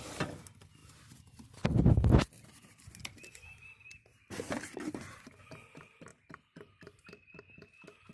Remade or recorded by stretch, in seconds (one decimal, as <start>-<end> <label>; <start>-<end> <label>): 0.0-0.8 recorded; 0.8-3.6 remade; 3.6-6.1 recorded; 6.1-7.4 remade; 7.4-8.1 recorded